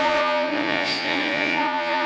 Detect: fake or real fake